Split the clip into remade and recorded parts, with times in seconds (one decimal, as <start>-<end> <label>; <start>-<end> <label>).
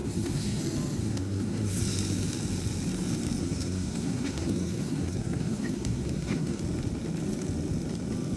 0.0-0.6 remade; 0.6-1.0 recorded; 1.0-1.8 remade; 1.8-3.4 recorded; 3.4-6.6 remade; 6.6-8.4 recorded